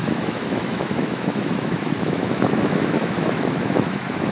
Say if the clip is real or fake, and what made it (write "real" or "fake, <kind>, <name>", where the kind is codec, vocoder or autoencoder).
fake, autoencoder, DAC-VAE